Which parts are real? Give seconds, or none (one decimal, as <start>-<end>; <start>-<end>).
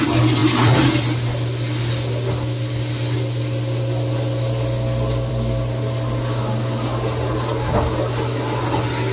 0.0-9.1